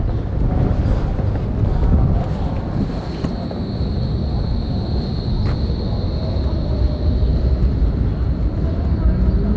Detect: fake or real real